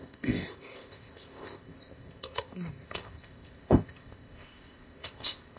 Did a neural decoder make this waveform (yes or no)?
yes